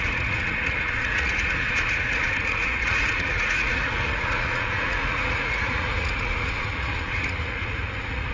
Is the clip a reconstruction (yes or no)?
yes